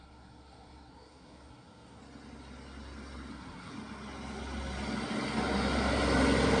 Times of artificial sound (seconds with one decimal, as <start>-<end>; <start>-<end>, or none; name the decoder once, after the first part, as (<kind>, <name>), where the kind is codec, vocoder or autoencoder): 0.0-2.0 (codec, SNAC); 3.3-3.7